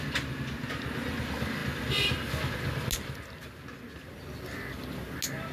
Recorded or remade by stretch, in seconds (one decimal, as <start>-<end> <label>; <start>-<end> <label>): 0.0-5.5 recorded